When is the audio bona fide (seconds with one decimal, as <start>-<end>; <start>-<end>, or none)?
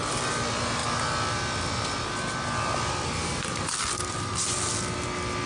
0.0-5.5